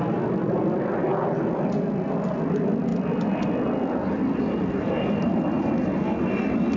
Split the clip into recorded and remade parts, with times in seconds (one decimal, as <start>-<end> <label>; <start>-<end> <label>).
0.0-6.8 recorded